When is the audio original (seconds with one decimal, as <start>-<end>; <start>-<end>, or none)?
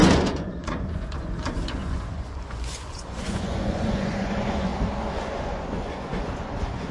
4.7-5.3